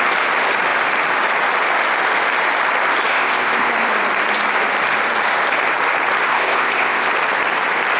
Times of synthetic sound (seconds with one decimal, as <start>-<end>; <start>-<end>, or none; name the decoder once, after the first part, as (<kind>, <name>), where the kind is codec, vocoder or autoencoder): 3.1-3.7 (codec, ZipCodec); 6.3-7.1